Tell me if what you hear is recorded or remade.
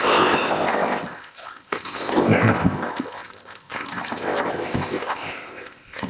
remade